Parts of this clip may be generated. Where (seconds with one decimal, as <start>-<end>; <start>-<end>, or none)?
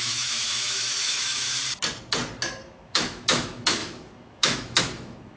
0.0-1.6; 2.6-5.4